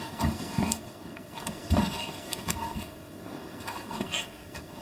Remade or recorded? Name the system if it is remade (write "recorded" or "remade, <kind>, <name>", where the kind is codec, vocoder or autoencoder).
remade, codec, SNAC